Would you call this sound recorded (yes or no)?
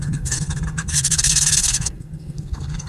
no